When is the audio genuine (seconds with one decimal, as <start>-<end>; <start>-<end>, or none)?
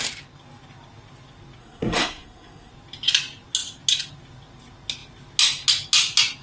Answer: 0.0-1.6; 2.7-6.4